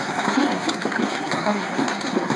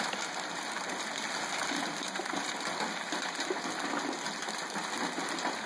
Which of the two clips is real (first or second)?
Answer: second